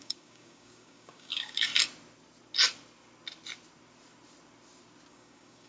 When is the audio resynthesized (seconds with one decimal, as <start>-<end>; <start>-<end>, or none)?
0.0-1.7; 5.1-5.7